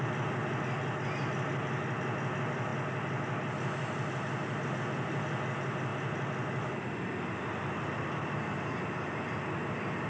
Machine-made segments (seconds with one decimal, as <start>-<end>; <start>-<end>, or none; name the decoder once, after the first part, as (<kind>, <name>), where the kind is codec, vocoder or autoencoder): none